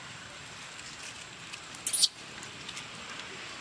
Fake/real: real